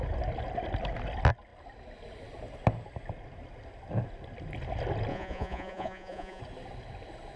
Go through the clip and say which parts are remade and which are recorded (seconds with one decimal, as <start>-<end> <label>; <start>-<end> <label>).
0.0-5.1 recorded; 5.1-6.4 remade; 6.4-7.4 recorded